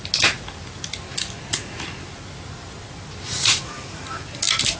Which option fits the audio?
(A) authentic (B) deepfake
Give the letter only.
A